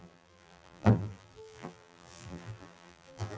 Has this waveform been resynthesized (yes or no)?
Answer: yes